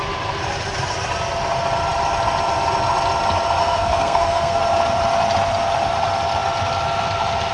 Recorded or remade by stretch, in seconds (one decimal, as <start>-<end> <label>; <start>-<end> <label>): 0.0-3.6 recorded; 3.6-4.6 remade; 4.6-7.5 recorded